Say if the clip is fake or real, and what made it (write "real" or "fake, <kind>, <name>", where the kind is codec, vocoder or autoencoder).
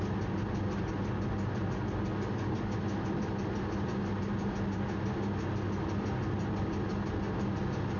real